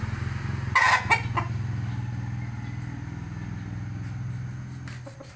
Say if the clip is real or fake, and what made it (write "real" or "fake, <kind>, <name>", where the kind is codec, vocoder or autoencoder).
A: real